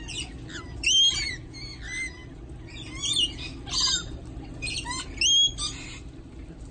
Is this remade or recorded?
recorded